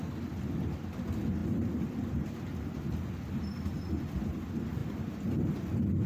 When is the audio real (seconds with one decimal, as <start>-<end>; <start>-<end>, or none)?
0.0-6.1